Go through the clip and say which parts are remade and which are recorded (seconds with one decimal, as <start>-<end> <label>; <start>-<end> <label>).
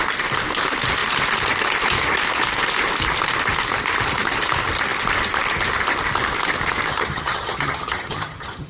0.0-6.9 recorded; 6.9-8.7 remade